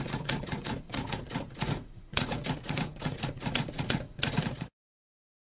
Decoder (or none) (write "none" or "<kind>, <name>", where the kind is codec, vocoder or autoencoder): vocoder, Vocos